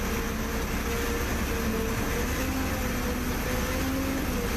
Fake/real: real